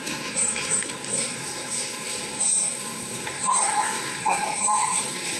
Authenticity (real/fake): fake